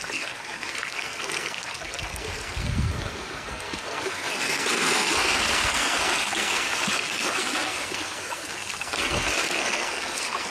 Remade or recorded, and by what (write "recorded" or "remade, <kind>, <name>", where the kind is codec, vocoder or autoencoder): remade, codec, SNAC